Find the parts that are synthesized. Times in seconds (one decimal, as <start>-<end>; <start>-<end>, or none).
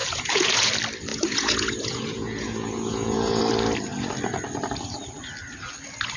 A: 0.0-0.7; 1.1-3.4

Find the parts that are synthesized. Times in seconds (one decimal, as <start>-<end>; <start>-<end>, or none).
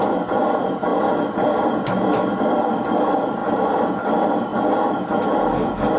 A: 3.4-3.9